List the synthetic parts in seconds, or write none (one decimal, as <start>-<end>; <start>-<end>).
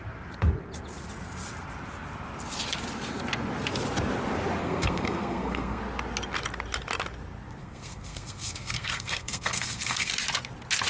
4.6-5.8; 7.6-10.1